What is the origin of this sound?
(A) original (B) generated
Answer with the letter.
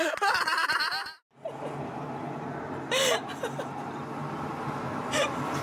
A